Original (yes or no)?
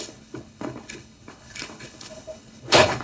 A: no